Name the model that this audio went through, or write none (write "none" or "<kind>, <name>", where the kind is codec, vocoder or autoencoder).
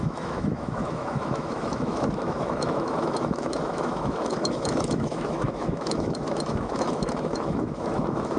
autoencoder, DAC-VAE